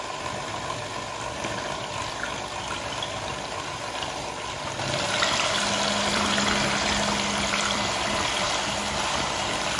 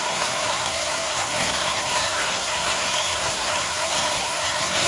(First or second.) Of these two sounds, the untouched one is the first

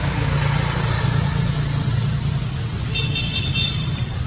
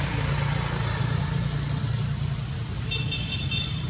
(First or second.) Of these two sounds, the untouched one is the first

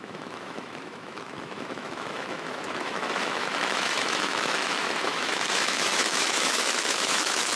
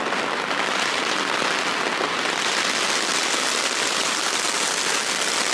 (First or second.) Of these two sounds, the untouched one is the second